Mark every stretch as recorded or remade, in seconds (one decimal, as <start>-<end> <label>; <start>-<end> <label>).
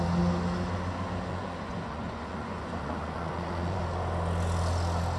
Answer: 0.0-1.3 recorded; 1.3-3.8 remade; 3.8-5.2 recorded